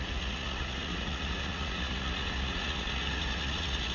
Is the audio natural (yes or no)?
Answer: no